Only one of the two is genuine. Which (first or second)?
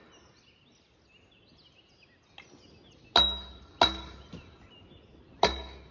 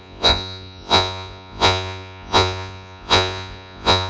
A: first